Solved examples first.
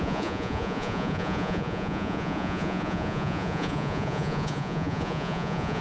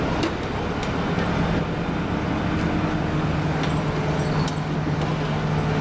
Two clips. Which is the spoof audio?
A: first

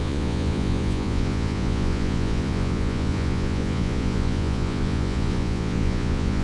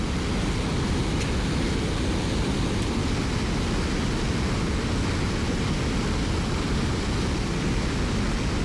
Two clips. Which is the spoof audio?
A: first